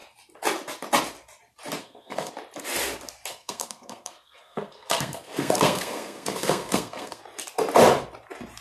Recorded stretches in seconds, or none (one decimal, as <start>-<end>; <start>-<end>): 0.0-1.8; 2.3-3.3; 7.2-8.6